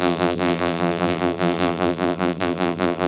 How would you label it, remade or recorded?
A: remade